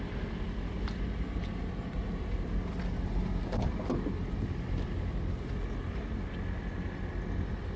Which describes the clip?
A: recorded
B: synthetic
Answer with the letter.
A